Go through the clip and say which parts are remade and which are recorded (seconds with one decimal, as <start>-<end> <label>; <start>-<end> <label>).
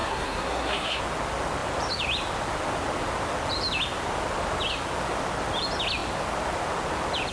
0.0-1.0 remade; 1.0-7.3 recorded